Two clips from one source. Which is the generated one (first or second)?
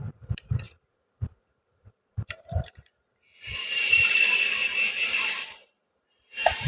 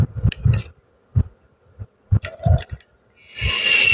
first